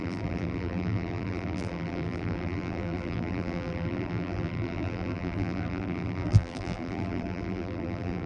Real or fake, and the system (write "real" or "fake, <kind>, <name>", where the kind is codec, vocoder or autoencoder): fake, vocoder, BigVGAN v2